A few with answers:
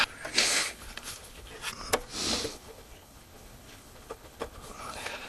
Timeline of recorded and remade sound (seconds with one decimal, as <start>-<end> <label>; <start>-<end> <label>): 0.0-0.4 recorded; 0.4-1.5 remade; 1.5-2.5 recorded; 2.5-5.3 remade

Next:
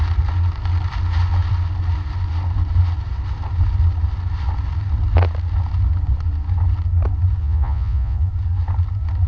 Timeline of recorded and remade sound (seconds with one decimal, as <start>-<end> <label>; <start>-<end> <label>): 0.0-7.4 recorded; 7.4-8.3 remade; 8.3-9.3 recorded

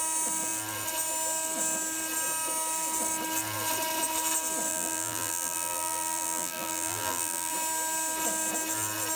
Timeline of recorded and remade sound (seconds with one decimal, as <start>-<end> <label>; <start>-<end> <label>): 0.0-4.7 recorded; 4.7-7.5 remade; 7.5-9.2 recorded

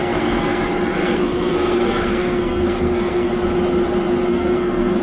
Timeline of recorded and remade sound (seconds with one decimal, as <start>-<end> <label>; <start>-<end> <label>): 0.0-0.6 remade; 0.6-1.0 recorded; 1.0-3.3 remade; 3.3-4.3 recorded; 4.3-5.0 remade

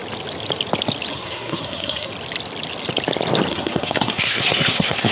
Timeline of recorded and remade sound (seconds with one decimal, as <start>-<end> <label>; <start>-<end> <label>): 0.0-1.1 recorded; 1.1-2.1 remade; 2.1-3.5 recorded; 3.5-5.1 remade

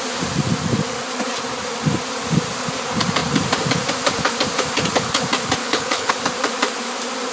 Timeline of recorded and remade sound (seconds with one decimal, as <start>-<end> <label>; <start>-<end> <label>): 0.0-5.6 recorded; 5.6-6.1 remade; 6.1-7.3 recorded